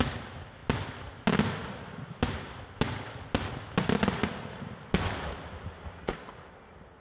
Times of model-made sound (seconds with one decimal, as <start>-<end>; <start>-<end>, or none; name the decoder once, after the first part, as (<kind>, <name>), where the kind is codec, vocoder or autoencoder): none